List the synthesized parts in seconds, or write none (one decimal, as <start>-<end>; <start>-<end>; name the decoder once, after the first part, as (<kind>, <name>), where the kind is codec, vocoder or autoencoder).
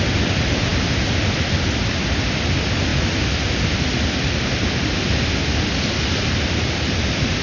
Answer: none